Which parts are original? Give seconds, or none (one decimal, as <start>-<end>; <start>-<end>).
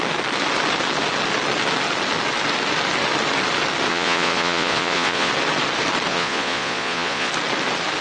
0.0-3.9; 5.3-6.1; 7.3-8.0